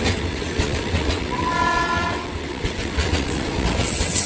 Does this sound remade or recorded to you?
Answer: remade